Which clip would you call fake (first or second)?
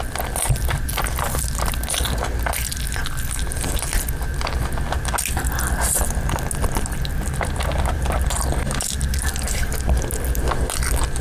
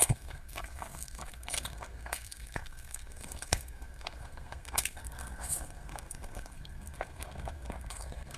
second